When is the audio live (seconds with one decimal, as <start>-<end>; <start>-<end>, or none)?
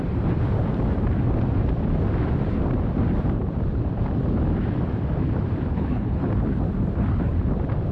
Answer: 0.0-5.7; 6.3-7.9